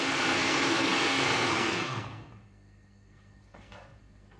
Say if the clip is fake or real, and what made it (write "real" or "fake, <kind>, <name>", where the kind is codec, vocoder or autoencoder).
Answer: fake, codec, SNAC